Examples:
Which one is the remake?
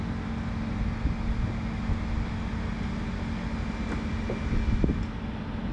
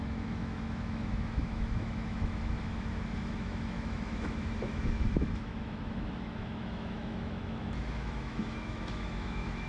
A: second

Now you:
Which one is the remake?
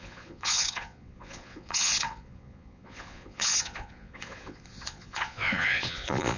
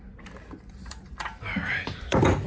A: first